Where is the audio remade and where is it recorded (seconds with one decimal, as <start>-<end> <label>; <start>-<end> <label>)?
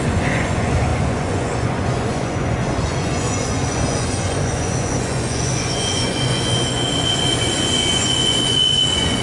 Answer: 0.0-9.2 remade